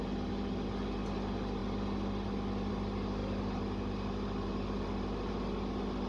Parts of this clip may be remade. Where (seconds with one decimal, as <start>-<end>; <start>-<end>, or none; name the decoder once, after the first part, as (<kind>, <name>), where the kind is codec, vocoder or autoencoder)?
none